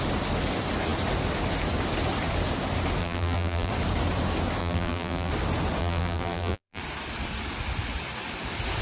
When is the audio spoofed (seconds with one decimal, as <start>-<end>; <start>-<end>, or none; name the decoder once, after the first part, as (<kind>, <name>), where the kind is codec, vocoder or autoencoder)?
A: 3.0-3.7 (vocoder, BigVGAN v2); 4.6-5.3; 5.8-6.8